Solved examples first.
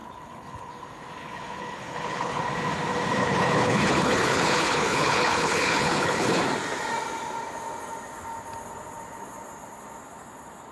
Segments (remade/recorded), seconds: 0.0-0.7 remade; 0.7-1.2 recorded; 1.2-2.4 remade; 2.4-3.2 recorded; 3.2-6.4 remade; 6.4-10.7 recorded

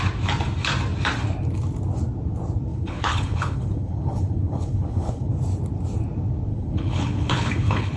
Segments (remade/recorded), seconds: 0.0-2.7 recorded; 2.7-5.3 remade; 5.3-6.5 recorded; 6.5-8.0 remade

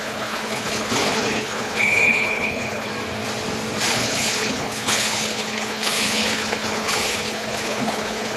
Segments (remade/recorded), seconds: 0.0-2.9 remade; 2.9-3.9 recorded; 3.9-8.4 remade

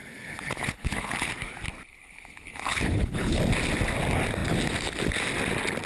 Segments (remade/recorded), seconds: 0.0-1.3 remade; 1.3-1.9 recorded; 1.9-3.4 remade; 3.4-5.9 recorded

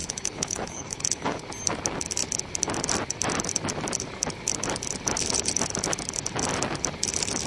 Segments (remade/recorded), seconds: 0.0-1.4 remade; 1.4-7.5 recorded

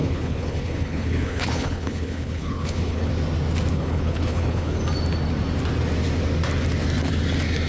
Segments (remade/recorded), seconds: 0.0-3.1 remade; 3.1-3.7 recorded; 3.7-4.8 remade; 4.8-7.7 recorded

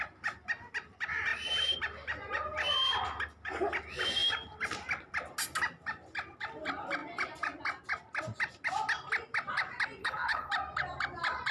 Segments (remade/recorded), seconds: 0.0-10.0 recorded; 10.0-10.5 remade; 10.5-11.5 recorded

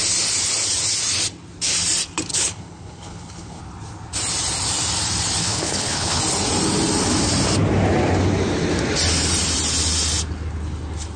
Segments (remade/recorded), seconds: 0.0-2.3 recorded; 2.3-3.6 remade; 3.6-5.4 recorded; 5.4-6.2 remade; 6.2-11.2 recorded